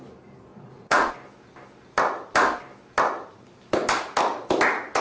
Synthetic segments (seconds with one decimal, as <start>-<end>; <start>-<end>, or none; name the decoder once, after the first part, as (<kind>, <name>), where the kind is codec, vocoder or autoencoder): 0.5-1.1 (vocoder, Vocos)

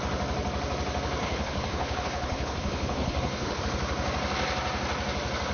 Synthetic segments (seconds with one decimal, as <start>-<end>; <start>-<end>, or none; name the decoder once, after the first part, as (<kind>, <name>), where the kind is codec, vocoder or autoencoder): 1.2-3.6 (codec, HILCodec)

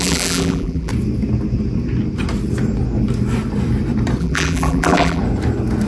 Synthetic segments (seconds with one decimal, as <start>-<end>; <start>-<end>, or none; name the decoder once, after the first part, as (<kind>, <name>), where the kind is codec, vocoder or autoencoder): 0.0-0.9 (vocoder, BigVGAN v2); 4.2-5.2

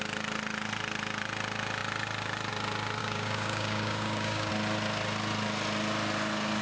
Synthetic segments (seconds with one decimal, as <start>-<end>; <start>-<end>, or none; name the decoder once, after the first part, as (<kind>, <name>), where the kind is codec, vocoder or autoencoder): 3.0-4.5 (codec, DAC)